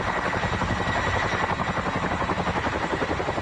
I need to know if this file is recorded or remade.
recorded